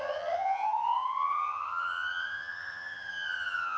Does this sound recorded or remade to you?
remade